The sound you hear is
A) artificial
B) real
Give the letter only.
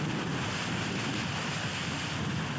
B